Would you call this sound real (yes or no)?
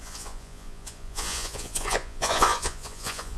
no